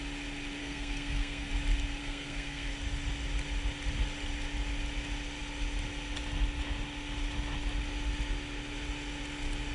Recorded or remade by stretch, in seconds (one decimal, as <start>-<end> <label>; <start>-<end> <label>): 0.0-0.6 recorded; 0.6-1.5 remade; 1.5-2.0 recorded; 2.0-2.7 remade; 2.7-9.7 recorded